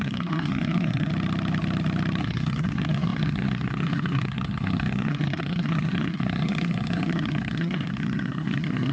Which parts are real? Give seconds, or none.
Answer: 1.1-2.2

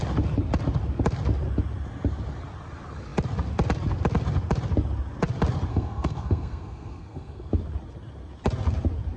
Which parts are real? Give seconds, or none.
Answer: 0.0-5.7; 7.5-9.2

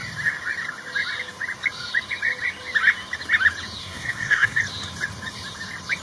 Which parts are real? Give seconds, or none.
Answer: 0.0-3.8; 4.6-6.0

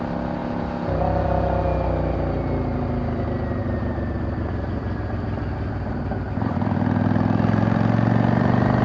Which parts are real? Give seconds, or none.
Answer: 0.0-8.8